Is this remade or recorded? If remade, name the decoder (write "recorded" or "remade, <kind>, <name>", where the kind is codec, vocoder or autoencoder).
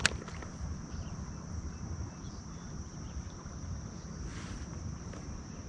recorded